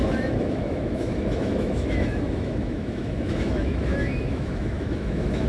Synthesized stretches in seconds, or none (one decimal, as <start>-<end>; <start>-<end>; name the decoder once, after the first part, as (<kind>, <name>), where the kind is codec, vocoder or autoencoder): 0.0-5.5 (autoencoder, DAC-VAE)